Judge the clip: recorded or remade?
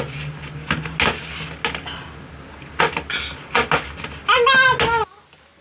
recorded